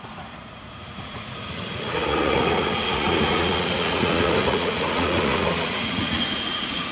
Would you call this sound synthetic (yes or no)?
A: yes